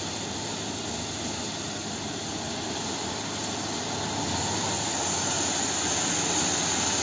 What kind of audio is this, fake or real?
real